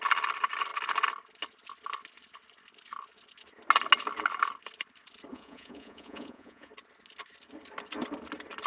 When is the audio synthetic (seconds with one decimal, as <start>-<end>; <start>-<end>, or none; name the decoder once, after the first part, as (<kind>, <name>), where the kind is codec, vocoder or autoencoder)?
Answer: 5.3-6.7 (vocoder, Vocos)